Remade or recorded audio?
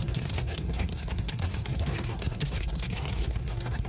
remade